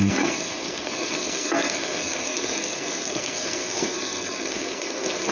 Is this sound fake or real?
fake